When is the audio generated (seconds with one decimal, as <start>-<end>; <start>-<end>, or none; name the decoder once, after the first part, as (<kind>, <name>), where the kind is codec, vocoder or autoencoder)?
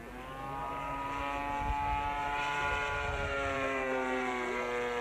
0.6-1.2 (vocoder, BigVGAN v2); 2.2-4.6